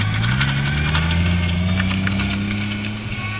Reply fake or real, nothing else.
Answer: real